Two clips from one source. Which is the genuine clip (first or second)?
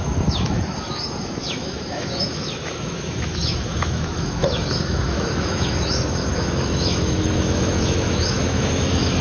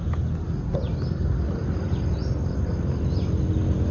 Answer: second